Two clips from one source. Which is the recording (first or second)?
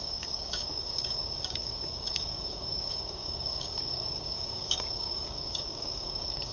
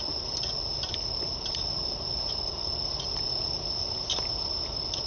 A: second